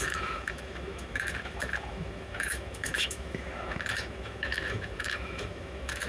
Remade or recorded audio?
remade